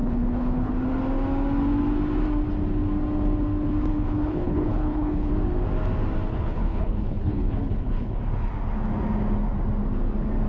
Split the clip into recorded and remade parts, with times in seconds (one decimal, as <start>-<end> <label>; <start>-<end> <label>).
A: 0.0-0.7 remade; 0.7-3.9 recorded; 3.9-5.3 remade; 5.3-6.3 recorded; 6.3-8.2 remade; 8.2-10.5 recorded